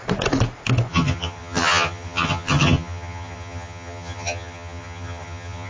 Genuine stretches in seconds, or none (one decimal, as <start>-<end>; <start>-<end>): 0.0-0.9